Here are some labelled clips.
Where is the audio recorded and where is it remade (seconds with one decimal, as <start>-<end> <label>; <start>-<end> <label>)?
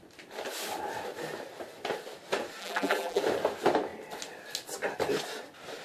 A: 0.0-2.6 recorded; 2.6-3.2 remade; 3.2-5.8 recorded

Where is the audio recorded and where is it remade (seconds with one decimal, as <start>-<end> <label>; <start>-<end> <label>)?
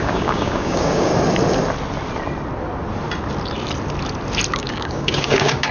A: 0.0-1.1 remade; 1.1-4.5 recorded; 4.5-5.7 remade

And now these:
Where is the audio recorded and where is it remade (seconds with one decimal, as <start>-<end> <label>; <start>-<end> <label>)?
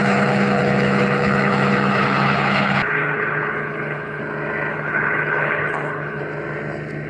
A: 0.0-4.2 remade; 4.2-4.7 recorded; 4.7-6.2 remade; 6.2-7.1 recorded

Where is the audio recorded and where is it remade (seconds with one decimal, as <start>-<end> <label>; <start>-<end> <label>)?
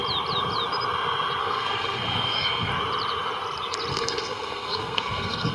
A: 0.0-1.4 recorded; 1.4-2.7 remade; 2.7-3.9 recorded; 3.9-5.5 remade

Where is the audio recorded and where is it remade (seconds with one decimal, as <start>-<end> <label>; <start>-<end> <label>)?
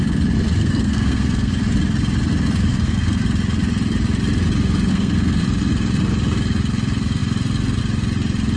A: 0.0-0.6 recorded; 0.6-1.5 remade; 1.5-2.7 recorded; 2.7-3.2 remade; 3.2-4.9 recorded; 4.9-5.4 remade; 5.4-8.6 recorded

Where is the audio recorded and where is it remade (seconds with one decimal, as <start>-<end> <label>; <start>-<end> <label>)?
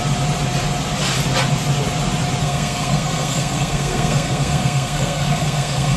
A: 0.0-2.4 recorded; 2.4-6.0 remade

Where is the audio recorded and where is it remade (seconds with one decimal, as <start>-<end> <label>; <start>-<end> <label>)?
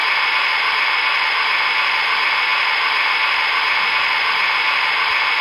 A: 0.0-5.4 recorded